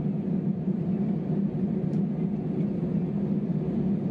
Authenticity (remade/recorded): recorded